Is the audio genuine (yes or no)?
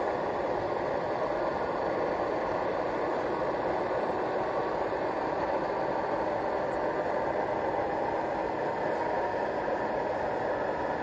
yes